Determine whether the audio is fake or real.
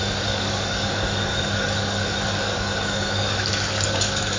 fake